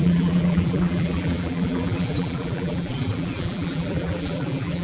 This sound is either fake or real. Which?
fake